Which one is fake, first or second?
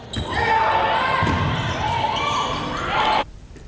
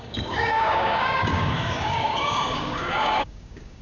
second